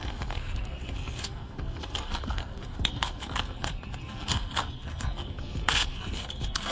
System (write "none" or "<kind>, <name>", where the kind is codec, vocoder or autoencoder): codec, SNAC